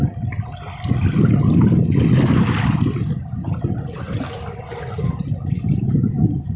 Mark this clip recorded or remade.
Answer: recorded